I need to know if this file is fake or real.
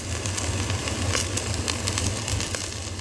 fake